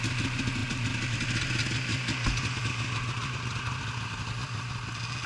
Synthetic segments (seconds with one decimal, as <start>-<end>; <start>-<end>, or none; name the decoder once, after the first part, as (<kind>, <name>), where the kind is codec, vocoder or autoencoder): none